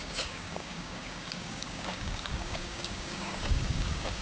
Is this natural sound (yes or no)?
no